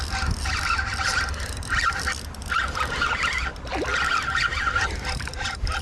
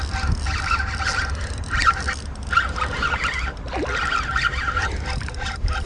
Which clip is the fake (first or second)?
first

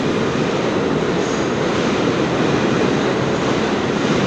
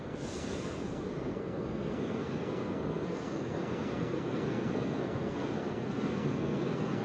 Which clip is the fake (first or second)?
second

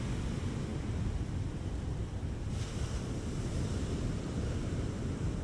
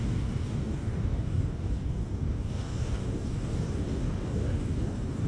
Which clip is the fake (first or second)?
second